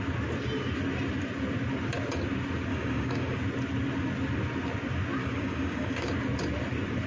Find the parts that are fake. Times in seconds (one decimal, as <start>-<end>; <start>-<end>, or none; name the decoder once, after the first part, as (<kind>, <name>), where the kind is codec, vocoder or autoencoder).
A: 2.7-3.4 (codec, DAC); 5.2-6.1